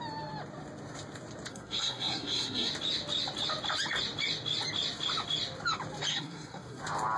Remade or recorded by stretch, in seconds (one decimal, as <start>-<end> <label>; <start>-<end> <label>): 0.0-1.5 recorded; 1.5-2.7 remade; 2.7-6.1 recorded; 6.1-6.8 remade; 6.8-7.2 recorded